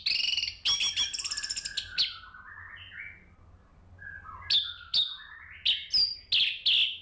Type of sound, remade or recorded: recorded